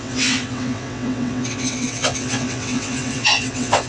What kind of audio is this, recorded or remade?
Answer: remade